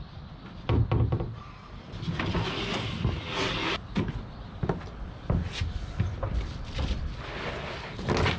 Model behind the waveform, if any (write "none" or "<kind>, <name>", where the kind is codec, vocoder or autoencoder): none